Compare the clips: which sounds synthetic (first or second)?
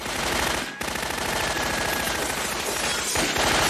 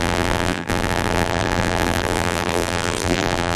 second